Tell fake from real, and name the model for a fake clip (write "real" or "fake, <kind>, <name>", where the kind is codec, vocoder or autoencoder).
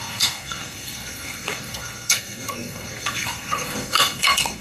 fake, codec, SNAC